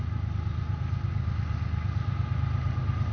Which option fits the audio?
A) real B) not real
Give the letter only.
A